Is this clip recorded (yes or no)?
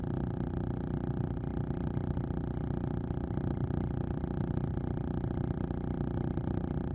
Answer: yes